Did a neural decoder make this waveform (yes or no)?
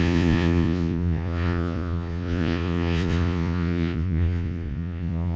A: yes